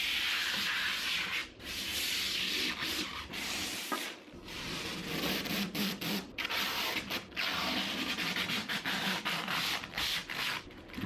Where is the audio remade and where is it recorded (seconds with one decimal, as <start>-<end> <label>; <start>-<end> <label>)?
0.0-11.1 remade